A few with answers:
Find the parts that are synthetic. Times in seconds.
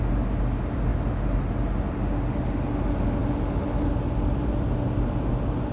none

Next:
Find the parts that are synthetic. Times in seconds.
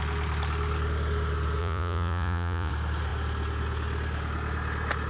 1.6-2.7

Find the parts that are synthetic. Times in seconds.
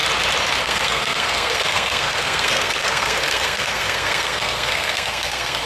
0.6-5.7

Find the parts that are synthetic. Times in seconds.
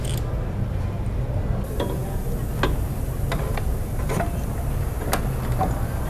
none